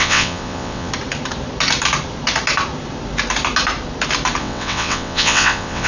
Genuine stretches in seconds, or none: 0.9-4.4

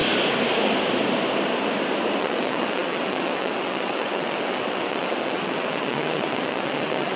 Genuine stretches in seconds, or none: 0.0-2.1

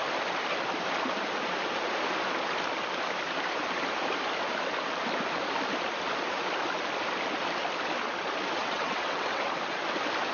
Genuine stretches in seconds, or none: 0.0-8.6; 9.5-10.3

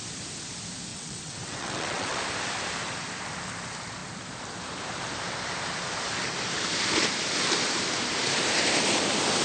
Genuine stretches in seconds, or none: 0.0-0.9; 2.2-9.4

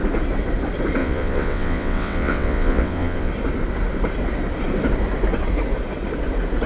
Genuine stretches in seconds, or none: 0.0-1.0; 3.3-6.7

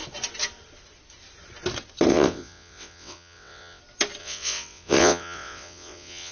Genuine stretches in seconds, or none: 0.0-2.1; 3.8-4.2